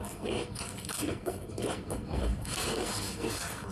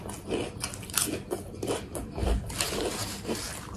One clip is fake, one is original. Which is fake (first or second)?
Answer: first